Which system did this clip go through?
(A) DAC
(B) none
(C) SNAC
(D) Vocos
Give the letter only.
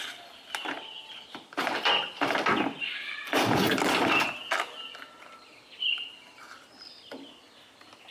B